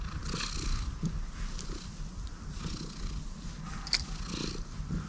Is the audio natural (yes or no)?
yes